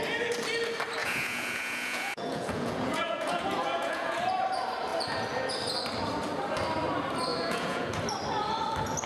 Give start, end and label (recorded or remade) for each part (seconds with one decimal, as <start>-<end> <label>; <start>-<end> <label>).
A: 0.0-1.0 recorded; 1.0-4.3 remade; 4.3-7.3 recorded; 7.3-8.0 remade; 8.0-9.1 recorded